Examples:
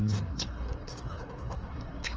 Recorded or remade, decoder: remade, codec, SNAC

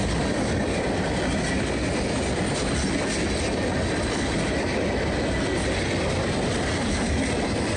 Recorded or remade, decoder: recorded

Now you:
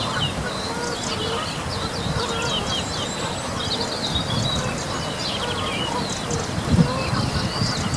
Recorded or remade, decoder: recorded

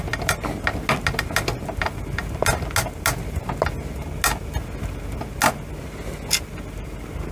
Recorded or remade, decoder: recorded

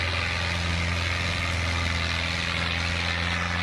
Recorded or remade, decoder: recorded